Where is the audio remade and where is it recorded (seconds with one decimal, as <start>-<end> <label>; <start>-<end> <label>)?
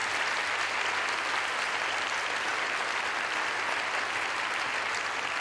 0.0-5.4 recorded